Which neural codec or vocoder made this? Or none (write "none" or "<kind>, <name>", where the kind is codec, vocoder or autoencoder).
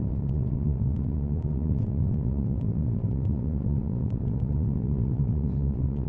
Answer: vocoder, WaveNeXt